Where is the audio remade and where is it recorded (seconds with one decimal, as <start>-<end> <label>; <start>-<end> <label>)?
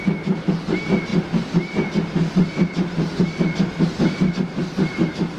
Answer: 0.0-5.4 recorded